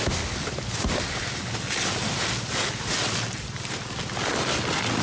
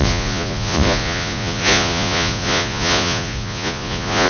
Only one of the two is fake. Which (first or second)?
second